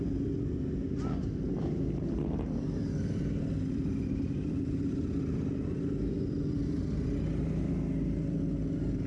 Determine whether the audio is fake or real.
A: real